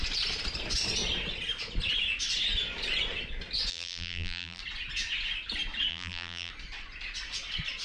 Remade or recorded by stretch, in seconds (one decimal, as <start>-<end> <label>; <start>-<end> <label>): 0.0-3.7 recorded; 3.7-4.6 remade; 4.6-5.9 recorded; 5.9-6.5 remade; 6.5-7.8 recorded